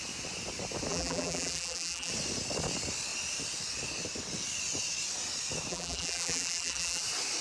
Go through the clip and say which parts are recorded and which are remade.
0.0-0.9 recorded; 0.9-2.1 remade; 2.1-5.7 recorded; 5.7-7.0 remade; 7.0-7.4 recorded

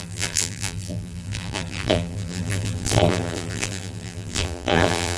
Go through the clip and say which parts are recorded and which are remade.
0.0-5.2 remade

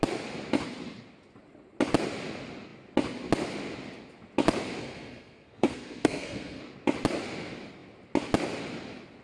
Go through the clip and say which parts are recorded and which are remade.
0.0-4.8 recorded; 4.8-6.6 remade; 6.6-9.2 recorded

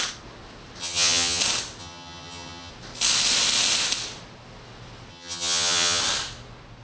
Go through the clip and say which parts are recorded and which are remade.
0.0-0.8 recorded; 0.8-1.4 remade; 1.4-1.8 recorded; 1.8-2.7 remade; 2.7-5.1 recorded; 5.1-6.0 remade; 6.0-6.8 recorded

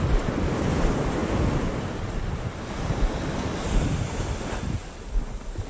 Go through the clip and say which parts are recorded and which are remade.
0.0-5.7 recorded